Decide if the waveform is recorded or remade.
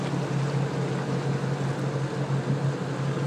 recorded